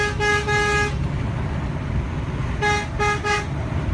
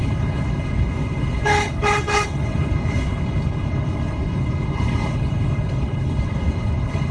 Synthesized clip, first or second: second